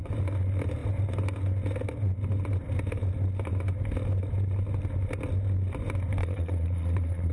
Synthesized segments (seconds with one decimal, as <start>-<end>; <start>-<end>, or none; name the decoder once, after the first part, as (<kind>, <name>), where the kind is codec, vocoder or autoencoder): 6.2-7.3 (vocoder, Vocos)